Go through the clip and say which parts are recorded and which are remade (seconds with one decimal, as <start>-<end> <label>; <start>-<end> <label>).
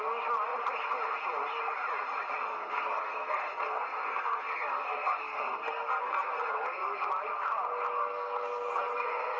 0.0-2.5 recorded; 2.5-7.1 remade; 7.1-8.0 recorded; 8.0-9.4 remade